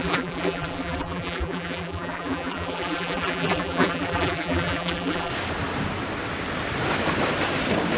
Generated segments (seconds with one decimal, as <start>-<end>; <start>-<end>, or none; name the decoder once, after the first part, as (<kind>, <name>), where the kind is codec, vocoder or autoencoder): 0.0-5.3 (vocoder, BigVGAN v2)

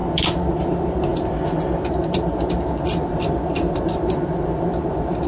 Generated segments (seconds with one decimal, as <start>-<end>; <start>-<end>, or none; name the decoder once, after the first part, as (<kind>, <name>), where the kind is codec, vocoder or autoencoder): 0.6-1.1 (vocoder, BigVGAN v2); 3.1-5.3

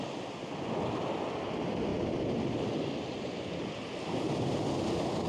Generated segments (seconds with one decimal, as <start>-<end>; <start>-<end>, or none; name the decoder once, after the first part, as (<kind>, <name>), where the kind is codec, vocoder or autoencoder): 1.9-4.0 (vocoder, BigVGAN v2)

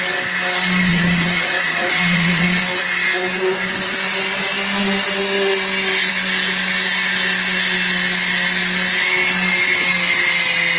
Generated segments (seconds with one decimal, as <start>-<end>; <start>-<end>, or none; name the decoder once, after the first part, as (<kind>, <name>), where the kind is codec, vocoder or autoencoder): 0.9-2.6 (vocoder, Vocos)

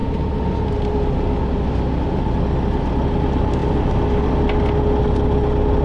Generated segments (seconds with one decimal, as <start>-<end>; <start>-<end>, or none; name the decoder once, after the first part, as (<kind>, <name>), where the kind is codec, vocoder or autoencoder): none

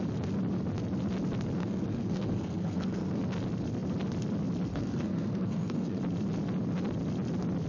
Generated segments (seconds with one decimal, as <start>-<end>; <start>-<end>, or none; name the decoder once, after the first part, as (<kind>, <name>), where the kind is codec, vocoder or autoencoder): 1.6-3.2 (codec, SNAC); 4.7-6.0

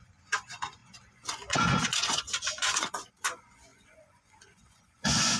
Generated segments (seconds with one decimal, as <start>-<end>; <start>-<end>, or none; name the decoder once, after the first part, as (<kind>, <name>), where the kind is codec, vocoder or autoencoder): 0.0-5.4 (vocoder, Vocos)

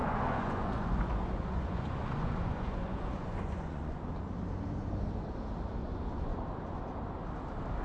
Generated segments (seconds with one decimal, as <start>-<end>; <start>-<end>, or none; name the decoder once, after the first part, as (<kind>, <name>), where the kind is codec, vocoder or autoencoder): 0.0-4.0 (vocoder, Vocos); 5.8-6.4